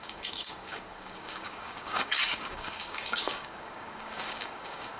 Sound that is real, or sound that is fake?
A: fake